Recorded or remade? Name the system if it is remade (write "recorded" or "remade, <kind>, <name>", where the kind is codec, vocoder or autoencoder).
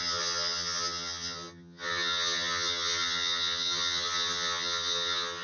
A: remade, vocoder, HiFi-GAN